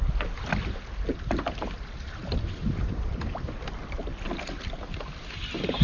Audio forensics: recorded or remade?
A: recorded